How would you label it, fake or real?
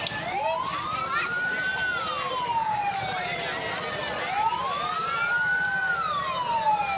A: real